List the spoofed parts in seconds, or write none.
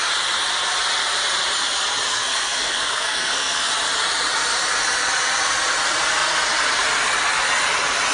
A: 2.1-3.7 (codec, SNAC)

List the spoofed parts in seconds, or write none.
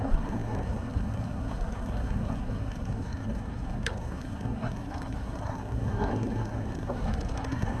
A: 0.0-7.8 (codec, SNAC)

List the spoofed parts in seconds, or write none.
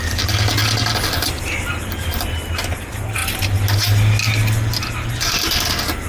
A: none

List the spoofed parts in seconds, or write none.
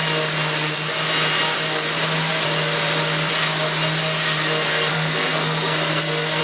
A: 4.7-6.4 (codec, SNAC)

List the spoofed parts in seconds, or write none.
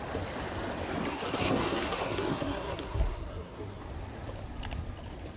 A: 1.1-3.8 (codec, SNAC)